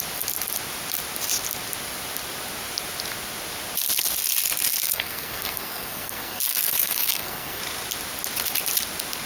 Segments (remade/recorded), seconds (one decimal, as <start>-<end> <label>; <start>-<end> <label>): 0.0-4.8 recorded; 4.8-7.6 remade; 7.6-9.3 recorded